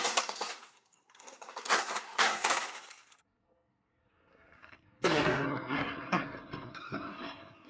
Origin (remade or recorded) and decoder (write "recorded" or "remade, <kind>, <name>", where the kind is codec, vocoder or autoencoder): remade, codec, SNAC